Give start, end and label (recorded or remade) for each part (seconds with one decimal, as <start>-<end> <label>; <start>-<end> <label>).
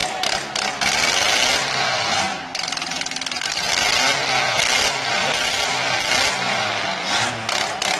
0.0-2.3 recorded; 2.3-3.7 remade; 3.7-5.2 recorded; 5.2-6.1 remade; 6.1-8.0 recorded